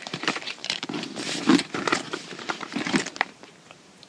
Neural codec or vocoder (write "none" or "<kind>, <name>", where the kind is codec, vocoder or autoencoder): vocoder, BigVGAN v2